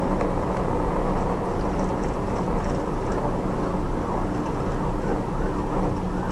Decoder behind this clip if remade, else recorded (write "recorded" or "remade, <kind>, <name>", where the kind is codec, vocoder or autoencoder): recorded